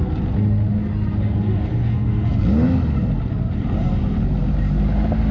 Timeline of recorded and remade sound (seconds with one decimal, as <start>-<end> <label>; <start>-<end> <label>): 0.0-5.3 recorded